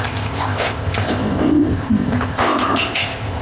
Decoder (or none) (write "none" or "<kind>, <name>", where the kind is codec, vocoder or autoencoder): codec, ZipCodec